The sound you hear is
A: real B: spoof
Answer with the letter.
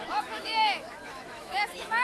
B